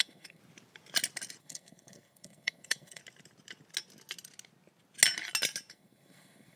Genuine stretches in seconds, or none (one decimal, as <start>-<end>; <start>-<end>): 0.4-1.4; 3.0-5.7